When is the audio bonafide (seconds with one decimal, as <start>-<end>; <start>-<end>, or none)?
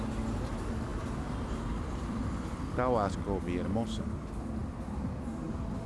0.0-5.9